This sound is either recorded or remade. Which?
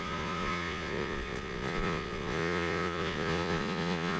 remade